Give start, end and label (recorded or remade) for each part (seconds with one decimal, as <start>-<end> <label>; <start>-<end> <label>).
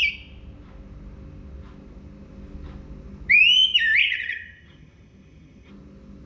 0.0-4.0 recorded; 4.0-5.7 remade; 5.7-6.3 recorded